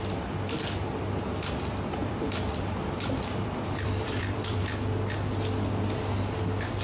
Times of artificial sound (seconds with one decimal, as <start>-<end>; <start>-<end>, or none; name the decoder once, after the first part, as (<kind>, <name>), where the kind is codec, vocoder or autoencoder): 2.0-4.6 (vocoder, BigVGAN v2)